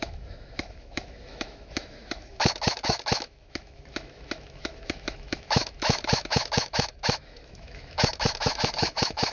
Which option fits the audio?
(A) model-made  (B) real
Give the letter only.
A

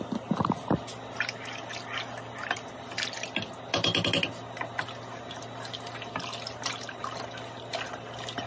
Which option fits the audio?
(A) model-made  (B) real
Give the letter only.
B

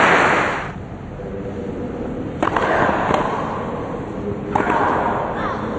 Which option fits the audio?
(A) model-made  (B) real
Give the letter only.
B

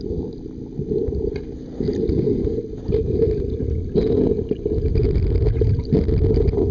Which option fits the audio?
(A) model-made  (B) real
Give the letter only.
B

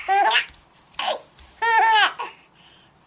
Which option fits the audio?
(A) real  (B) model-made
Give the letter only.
A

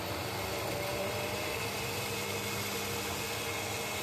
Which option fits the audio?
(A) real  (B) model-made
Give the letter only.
A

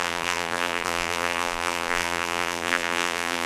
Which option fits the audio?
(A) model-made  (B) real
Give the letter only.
A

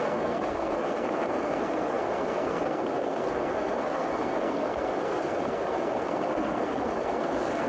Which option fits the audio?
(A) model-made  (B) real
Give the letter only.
A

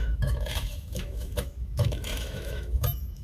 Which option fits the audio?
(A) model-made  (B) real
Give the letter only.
A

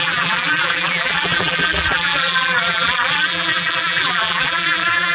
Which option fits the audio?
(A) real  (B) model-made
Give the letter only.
B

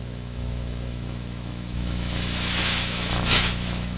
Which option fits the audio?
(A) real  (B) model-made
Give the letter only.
B